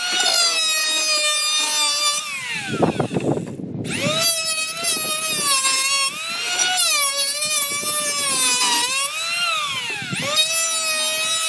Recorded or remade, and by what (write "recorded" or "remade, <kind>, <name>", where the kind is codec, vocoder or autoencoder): recorded